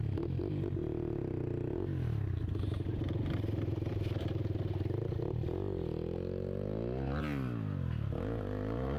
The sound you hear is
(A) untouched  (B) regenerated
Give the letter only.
A